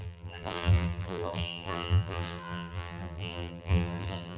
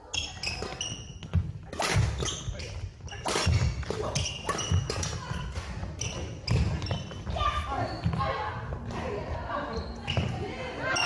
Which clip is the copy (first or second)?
first